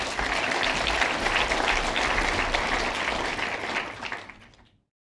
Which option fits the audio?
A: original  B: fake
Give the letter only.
A